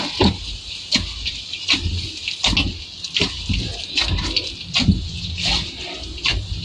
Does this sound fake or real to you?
real